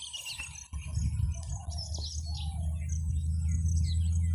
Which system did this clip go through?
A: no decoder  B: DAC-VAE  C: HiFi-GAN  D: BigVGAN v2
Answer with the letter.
A